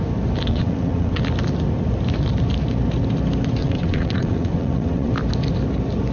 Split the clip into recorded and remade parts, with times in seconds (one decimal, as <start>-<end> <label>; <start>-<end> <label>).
0.0-0.5 recorded; 0.5-1.2 remade; 1.2-3.6 recorded; 3.6-5.1 remade; 5.1-6.1 recorded

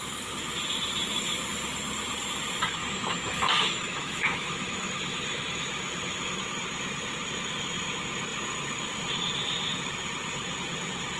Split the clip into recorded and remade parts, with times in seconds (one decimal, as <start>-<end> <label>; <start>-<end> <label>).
0.0-2.8 recorded; 2.8-6.4 remade; 6.4-11.2 recorded